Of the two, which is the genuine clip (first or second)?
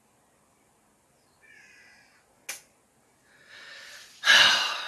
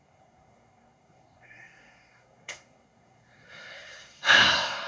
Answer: first